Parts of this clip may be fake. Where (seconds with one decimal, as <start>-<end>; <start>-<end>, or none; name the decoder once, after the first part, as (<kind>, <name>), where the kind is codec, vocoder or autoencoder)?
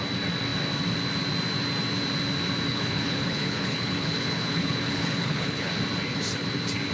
2.7-5.7 (codec, HILCodec)